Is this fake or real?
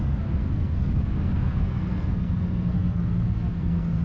fake